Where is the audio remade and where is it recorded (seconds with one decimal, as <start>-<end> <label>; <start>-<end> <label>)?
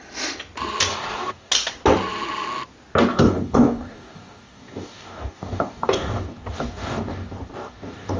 0.0-0.9 recorded; 0.9-1.5 remade; 1.5-3.1 recorded; 3.1-8.2 remade